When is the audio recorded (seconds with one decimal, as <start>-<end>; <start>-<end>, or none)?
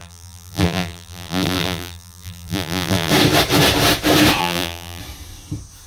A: 3.1-4.4; 5.0-5.9